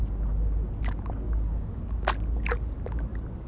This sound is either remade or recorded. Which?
recorded